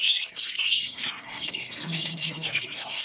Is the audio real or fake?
fake